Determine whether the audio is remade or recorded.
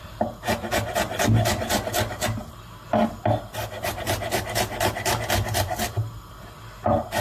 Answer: recorded